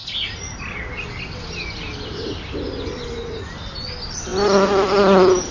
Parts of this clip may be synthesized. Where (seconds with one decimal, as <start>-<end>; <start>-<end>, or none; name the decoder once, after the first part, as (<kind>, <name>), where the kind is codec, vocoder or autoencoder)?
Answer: none